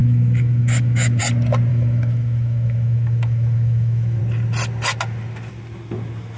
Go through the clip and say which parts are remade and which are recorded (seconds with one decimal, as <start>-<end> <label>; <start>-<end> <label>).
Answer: 0.0-1.2 remade; 1.2-1.7 recorded; 1.7-4.2 remade; 4.2-6.4 recorded